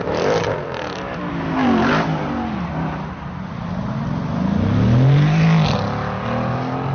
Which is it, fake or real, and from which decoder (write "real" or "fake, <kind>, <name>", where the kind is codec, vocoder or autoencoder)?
real